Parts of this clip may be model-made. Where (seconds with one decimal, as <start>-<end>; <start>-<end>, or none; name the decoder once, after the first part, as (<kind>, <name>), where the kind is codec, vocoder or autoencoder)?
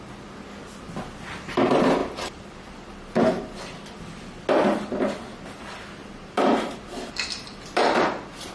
2.0-4.0 (vocoder, BigVGAN v2); 5.3-8.5